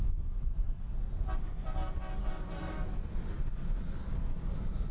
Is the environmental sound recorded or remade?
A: recorded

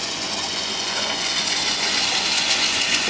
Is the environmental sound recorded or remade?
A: remade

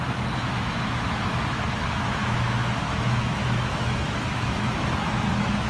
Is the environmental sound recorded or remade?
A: remade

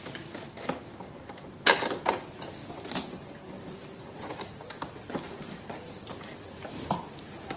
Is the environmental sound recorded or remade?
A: recorded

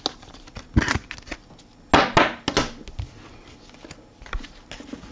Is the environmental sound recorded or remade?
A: recorded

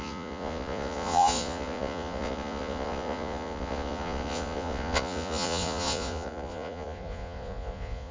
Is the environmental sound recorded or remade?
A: remade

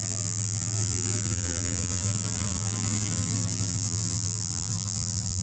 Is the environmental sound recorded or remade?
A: remade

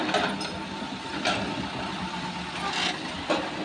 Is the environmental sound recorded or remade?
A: recorded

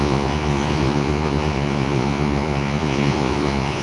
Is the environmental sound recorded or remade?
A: remade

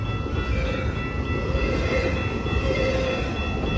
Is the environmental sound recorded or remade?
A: recorded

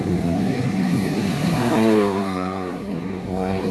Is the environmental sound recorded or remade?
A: remade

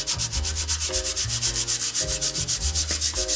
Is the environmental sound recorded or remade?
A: recorded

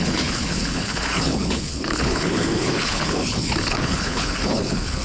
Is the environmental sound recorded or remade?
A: remade